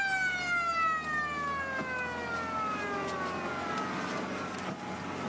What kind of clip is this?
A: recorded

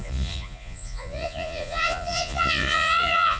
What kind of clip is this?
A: remade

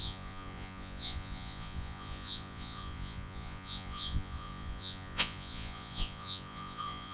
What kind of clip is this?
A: remade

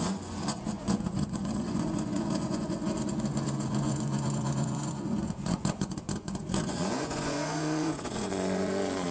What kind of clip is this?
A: remade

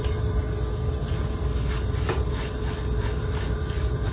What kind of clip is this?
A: recorded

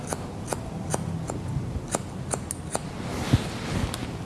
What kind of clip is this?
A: recorded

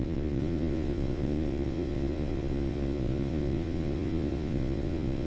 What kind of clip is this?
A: remade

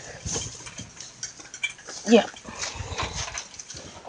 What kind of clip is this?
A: recorded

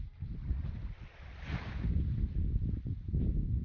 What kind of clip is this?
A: recorded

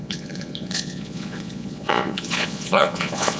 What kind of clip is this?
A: remade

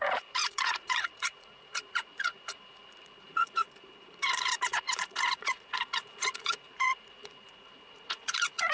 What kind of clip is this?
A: remade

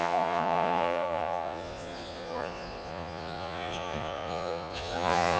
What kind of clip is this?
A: remade